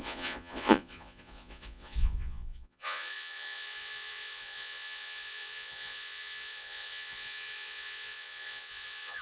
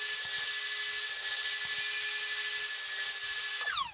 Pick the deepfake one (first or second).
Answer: first